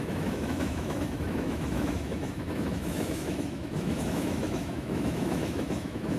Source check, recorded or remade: remade